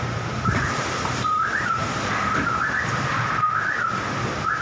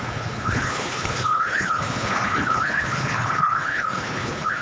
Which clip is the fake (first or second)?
second